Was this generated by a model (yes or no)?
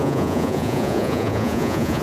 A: yes